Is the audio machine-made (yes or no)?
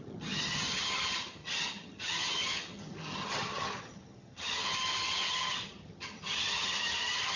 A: yes